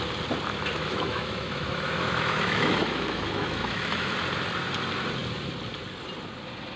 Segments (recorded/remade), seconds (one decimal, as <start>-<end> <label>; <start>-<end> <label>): 0.0-0.8 recorded; 0.8-4.1 remade; 4.1-6.8 recorded